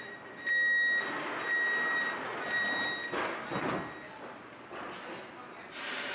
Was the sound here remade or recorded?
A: recorded